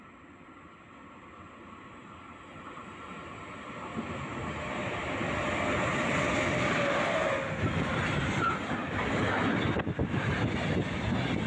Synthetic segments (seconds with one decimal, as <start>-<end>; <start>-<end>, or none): none

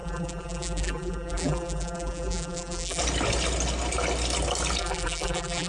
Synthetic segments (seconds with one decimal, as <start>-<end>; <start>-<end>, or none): 0.0-3.0; 4.8-5.7

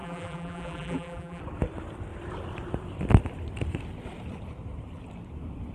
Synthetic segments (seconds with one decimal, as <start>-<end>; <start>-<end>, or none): 0.0-1.4

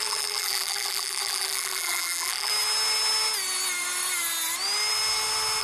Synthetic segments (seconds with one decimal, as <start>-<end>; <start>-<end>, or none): 0.0-2.5